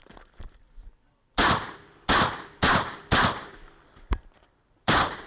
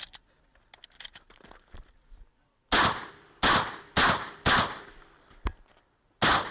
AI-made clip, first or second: first